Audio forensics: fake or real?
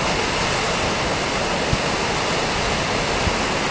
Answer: real